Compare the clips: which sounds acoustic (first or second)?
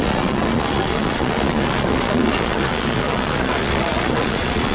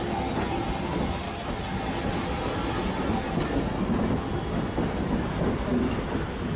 second